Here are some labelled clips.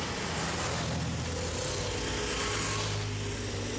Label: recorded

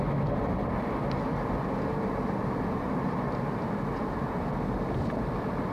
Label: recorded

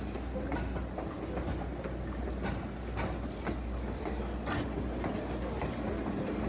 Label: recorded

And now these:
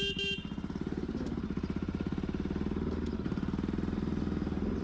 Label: recorded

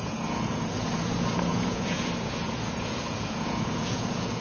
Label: remade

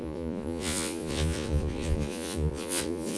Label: remade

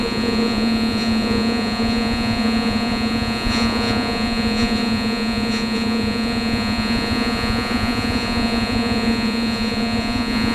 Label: remade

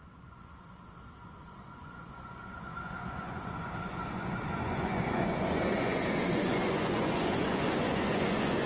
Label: remade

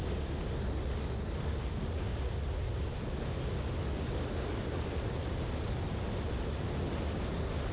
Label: recorded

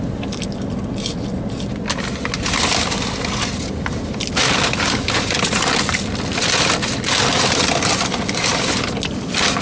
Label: recorded